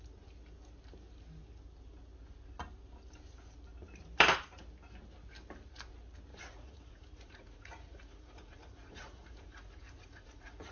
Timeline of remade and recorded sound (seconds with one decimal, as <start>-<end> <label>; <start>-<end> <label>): 0.0-6.3 recorded; 6.3-10.7 remade